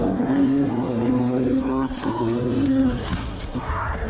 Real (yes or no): no